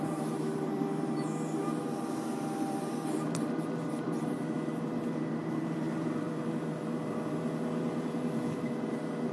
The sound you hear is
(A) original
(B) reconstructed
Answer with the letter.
B